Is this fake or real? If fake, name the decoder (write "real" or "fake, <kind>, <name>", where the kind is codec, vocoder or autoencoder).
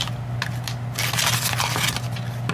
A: real